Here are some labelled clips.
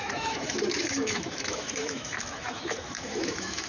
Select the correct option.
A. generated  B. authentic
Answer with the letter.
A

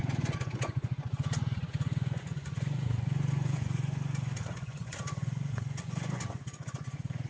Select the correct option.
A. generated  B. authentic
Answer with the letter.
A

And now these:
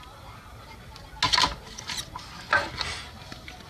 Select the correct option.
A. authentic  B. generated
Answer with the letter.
A